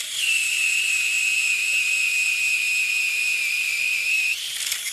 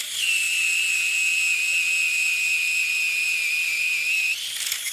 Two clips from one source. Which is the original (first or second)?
second